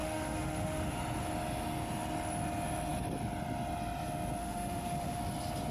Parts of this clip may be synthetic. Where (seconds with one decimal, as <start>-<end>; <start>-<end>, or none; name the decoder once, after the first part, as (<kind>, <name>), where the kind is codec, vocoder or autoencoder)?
0.0-1.0 (autoencoder, DAC-VAE); 4.4-5.2